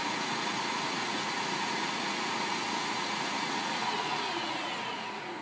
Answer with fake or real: fake